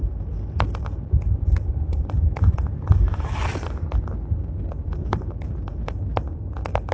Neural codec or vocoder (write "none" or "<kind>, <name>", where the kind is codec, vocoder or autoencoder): none